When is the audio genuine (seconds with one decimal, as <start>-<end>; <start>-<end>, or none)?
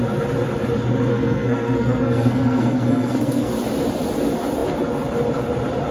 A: 0.0-1.1; 3.5-5.9